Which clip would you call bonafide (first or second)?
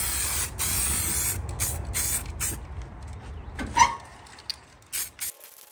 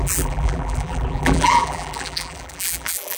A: first